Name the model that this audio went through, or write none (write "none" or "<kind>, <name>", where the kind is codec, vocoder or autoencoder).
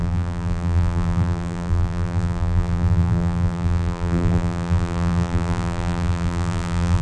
vocoder, BigVGAN v2